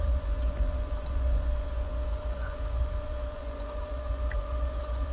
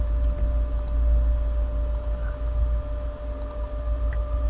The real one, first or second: second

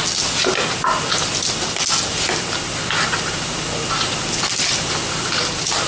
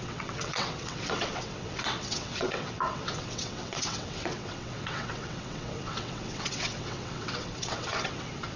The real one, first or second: first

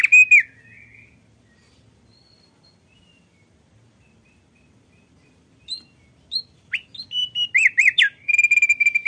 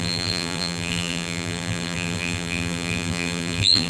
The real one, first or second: first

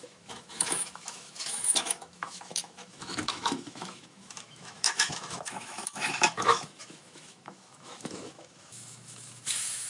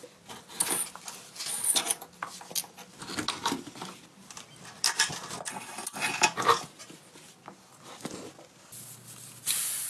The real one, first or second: second